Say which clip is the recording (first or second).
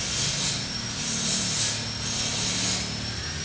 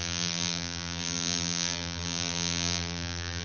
first